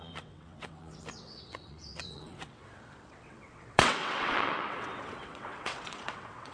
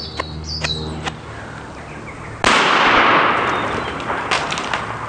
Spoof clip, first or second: first